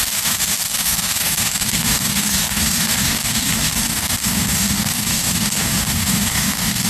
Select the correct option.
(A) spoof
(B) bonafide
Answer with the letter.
A